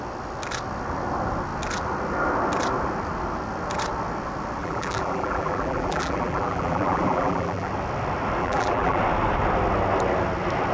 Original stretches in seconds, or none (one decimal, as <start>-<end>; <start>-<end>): 0.0-4.6; 7.7-8.4; 9.0-10.7